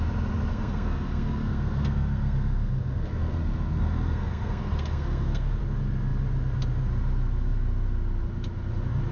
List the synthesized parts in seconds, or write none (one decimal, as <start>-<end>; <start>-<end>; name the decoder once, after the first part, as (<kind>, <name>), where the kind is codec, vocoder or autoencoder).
0.5-5.6 (codec, SNAC)